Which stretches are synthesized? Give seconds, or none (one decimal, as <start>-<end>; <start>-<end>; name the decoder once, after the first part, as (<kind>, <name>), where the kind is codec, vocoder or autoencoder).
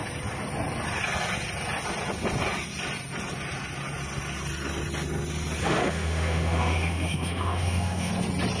5.6-8.1 (autoencoder, DAC-VAE)